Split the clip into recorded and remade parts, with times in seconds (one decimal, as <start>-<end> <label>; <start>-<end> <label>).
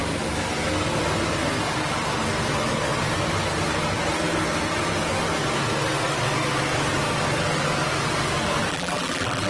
0.0-8.7 recorded; 8.7-9.5 remade